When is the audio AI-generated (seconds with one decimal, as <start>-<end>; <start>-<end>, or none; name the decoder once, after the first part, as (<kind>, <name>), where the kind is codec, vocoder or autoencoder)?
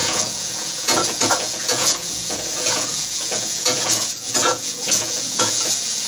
0.0-6.1 (vocoder, Vocos)